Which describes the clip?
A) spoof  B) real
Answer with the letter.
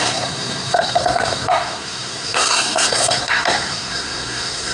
A